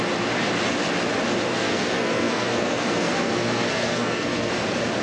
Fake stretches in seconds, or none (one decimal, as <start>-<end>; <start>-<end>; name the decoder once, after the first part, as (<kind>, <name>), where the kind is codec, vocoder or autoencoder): 1.5-4.5 (codec, SNAC)